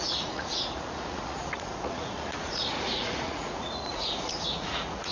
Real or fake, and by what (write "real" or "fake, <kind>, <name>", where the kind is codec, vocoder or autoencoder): fake, vocoder, Vocos